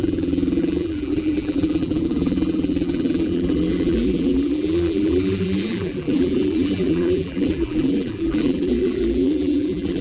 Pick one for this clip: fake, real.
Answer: fake